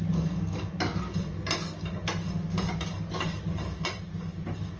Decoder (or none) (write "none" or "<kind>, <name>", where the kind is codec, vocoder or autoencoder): none